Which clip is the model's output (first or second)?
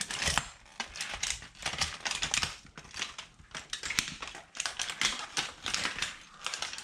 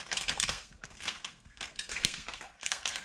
second